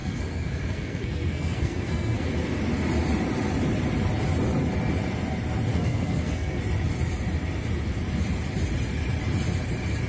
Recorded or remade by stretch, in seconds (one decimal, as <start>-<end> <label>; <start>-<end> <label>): 0.0-2.3 remade; 2.3-5.7 recorded; 5.7-6.6 remade; 6.6-10.1 recorded